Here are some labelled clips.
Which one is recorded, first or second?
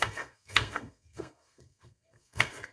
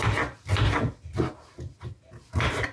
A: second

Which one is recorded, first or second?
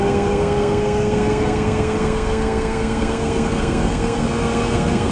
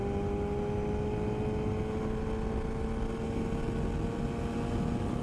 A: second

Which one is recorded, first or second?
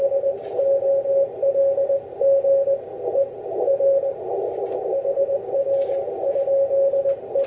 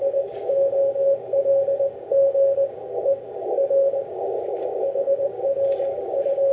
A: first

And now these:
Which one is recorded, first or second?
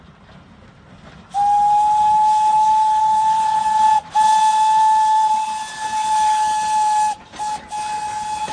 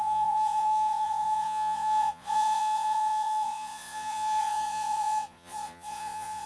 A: first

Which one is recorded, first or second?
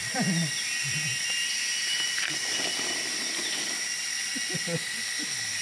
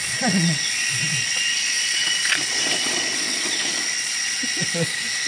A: first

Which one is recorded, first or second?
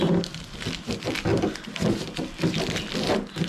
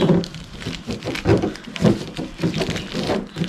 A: first